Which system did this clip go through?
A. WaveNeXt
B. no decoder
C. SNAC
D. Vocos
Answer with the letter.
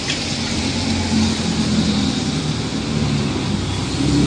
B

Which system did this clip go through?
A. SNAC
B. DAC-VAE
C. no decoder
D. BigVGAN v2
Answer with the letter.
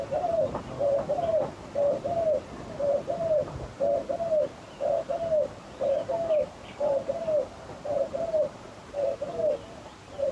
D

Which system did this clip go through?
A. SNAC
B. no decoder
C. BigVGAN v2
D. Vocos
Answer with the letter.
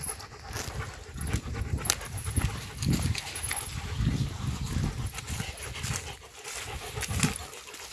B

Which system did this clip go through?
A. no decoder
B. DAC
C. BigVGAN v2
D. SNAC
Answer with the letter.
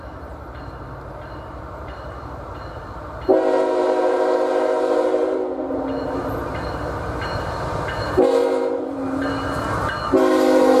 C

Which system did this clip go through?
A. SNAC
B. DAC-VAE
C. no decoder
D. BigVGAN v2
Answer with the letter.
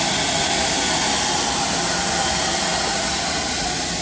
C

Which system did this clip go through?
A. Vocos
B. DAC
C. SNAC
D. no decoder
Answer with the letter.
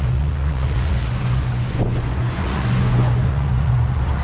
A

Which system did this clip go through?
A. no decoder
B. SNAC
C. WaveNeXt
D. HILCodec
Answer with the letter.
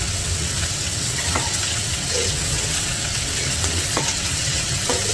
C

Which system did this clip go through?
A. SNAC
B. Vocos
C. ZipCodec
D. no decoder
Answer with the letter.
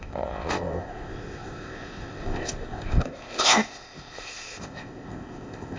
C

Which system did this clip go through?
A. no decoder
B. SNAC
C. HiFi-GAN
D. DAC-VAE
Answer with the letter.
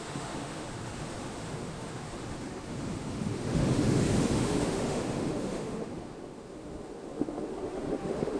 D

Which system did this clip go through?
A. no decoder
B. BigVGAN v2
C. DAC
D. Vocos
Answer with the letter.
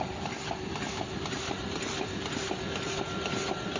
A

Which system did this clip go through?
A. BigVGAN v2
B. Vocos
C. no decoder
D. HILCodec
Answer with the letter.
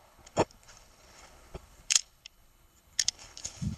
D